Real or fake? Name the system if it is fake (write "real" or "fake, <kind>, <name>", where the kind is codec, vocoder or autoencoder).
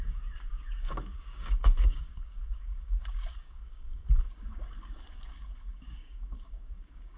fake, codec, DAC